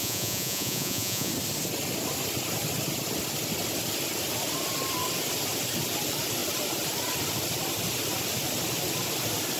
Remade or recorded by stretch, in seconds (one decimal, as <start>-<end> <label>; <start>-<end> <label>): 0.0-1.3 remade; 1.3-9.6 recorded